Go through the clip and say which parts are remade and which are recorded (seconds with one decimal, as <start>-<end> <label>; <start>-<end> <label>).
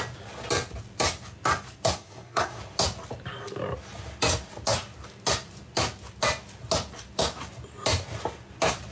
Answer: 0.0-1.9 recorded; 1.9-2.6 remade; 2.6-8.9 recorded